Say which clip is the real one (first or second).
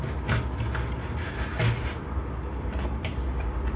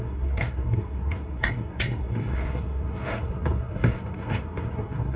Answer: first